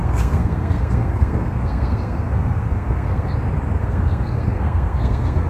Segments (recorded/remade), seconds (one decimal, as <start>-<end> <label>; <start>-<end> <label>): 0.0-3.3 remade; 3.3-3.8 recorded; 3.8-5.5 remade